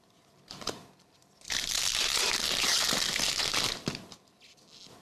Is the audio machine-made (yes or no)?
no